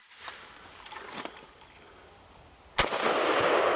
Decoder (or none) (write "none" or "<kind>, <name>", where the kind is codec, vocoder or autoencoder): none